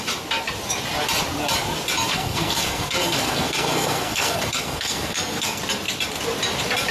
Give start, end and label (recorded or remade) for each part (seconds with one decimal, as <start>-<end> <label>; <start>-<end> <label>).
0.0-2.1 recorded; 2.1-5.6 remade; 5.6-6.9 recorded